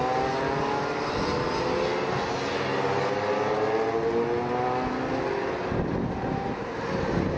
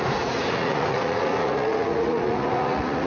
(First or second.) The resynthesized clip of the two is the second